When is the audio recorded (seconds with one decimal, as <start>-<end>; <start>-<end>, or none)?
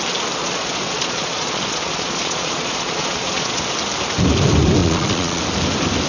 0.0-0.4; 3.6-4.8; 5.4-6.1